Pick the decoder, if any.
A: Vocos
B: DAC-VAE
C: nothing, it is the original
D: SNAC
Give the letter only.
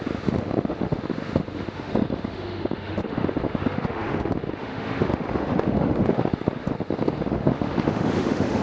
B